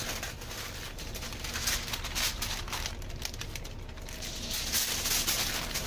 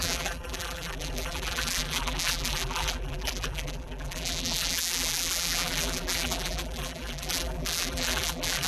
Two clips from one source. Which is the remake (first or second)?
second